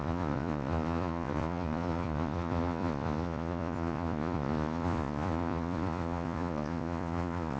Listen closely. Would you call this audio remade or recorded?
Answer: remade